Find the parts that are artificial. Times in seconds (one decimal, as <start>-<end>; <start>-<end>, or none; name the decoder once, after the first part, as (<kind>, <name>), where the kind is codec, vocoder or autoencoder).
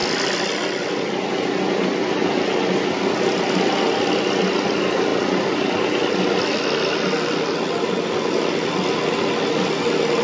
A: none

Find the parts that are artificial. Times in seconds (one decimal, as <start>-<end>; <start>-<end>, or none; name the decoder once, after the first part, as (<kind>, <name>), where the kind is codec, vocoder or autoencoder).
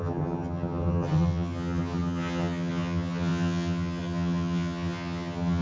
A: 0.0-5.6 (vocoder, HiFi-GAN)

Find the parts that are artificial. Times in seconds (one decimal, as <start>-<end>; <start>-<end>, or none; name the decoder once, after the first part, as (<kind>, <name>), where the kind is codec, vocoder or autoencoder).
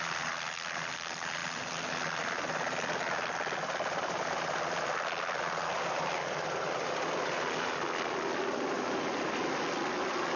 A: none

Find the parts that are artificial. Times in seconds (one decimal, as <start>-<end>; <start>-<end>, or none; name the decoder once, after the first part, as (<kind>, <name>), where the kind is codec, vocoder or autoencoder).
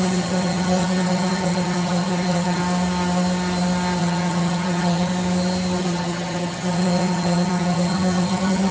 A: 0.0-2.6 (vocoder, HiFi-GAN); 4.0-5.1; 5.8-8.7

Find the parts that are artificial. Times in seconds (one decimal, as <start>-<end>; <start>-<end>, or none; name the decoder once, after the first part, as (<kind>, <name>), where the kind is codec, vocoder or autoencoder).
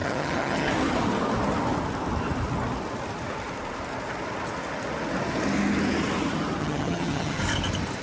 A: 0.0-0.7 (vocoder, HiFi-GAN); 6.6-7.4